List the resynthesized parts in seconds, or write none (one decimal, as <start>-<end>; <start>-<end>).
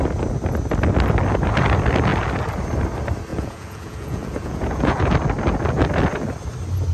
3.3-5.1